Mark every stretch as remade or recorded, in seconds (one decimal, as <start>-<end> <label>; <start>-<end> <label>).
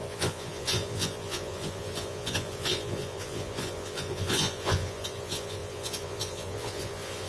0.0-7.3 remade